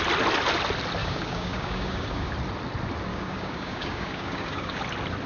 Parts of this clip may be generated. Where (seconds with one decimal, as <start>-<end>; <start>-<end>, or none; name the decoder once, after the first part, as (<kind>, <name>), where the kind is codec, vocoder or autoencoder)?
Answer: 1.0-2.3 (codec, DAC); 3.1-4.8